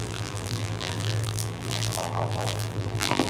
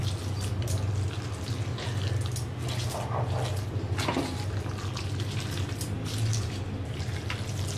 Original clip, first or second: second